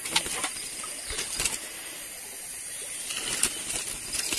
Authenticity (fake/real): real